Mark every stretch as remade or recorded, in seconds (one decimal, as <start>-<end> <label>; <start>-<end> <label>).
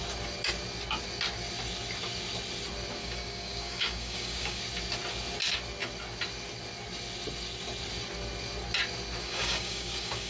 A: 0.0-3.0 recorded; 3.0-4.6 remade; 4.6-9.2 recorded; 9.2-10.3 remade